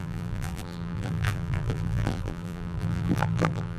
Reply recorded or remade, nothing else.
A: remade